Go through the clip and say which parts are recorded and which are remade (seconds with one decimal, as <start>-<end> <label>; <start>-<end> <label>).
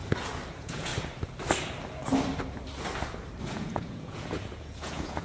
0.0-0.5 recorded; 0.5-0.9 remade; 0.9-3.4 recorded; 3.4-5.2 remade